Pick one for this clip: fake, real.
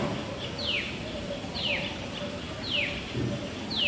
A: real